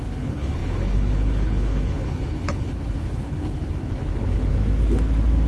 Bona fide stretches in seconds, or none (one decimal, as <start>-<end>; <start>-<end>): 4.5-5.5